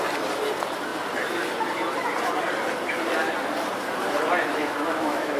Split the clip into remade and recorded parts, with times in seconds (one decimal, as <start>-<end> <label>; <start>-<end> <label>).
0.0-4.6 recorded; 4.6-5.4 remade